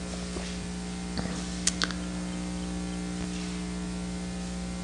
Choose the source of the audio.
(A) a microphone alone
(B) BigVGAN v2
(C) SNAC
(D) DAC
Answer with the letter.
A